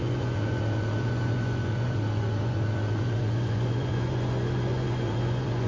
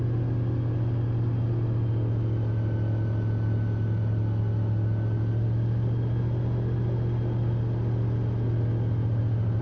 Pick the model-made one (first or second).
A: first